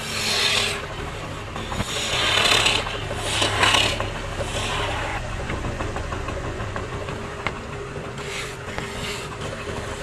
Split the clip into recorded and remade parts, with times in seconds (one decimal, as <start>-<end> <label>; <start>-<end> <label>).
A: 0.0-1.7 recorded; 1.7-2.3 remade; 2.3-5.1 recorded; 5.1-9.4 remade; 9.4-10.0 recorded